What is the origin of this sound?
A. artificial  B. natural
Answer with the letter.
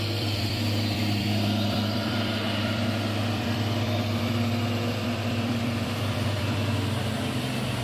A